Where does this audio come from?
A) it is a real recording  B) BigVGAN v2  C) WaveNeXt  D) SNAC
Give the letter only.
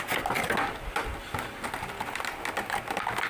A